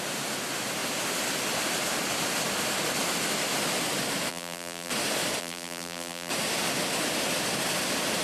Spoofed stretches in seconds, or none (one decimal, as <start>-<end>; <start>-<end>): 4.3-4.9; 5.4-6.3